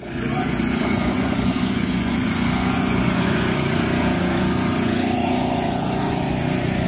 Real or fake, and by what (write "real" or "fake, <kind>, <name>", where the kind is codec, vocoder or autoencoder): fake, vocoder, Vocos